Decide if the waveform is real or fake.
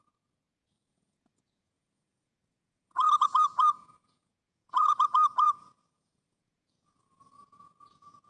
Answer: fake